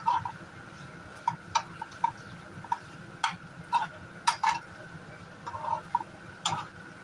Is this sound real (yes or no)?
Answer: yes